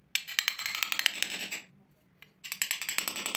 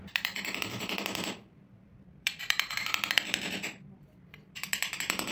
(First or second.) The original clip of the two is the first